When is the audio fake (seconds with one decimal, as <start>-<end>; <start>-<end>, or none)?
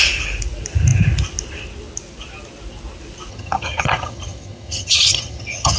3.3-5.8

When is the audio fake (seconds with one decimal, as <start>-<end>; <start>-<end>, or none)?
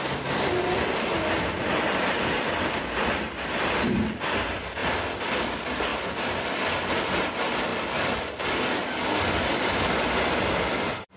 0.0-4.8; 5.4-11.2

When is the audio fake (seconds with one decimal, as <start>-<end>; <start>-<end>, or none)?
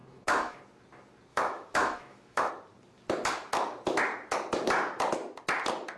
0.0-0.6; 1.3-2.5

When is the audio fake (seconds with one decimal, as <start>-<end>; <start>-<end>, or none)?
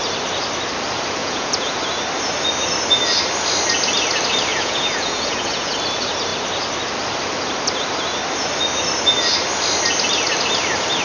1.2-1.8; 4.5-5.7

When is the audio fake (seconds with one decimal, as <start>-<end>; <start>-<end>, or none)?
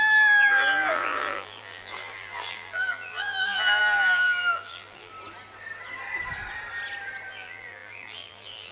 0.0-5.1; 7.3-8.7